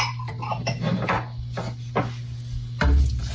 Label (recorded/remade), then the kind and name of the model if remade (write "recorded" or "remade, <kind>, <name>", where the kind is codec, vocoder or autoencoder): recorded